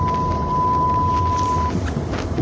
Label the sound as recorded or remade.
recorded